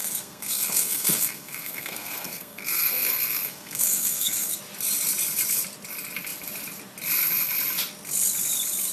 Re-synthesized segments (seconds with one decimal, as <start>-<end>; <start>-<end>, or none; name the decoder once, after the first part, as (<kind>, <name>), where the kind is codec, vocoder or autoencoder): 0.0-4.6 (codec, SNAC)